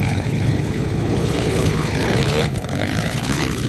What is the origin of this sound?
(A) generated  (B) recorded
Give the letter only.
A